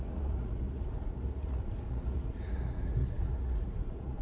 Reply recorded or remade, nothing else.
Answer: remade